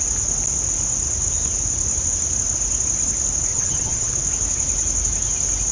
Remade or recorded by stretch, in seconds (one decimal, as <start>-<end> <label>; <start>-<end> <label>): 0.0-3.5 recorded; 3.5-4.1 remade; 4.1-5.7 recorded